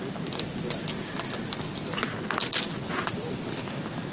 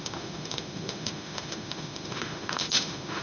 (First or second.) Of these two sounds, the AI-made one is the second